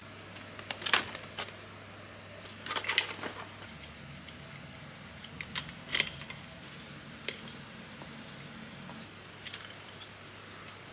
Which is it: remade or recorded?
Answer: recorded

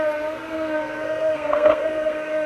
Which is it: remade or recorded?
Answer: remade